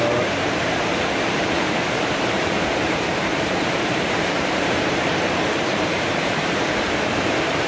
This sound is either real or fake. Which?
fake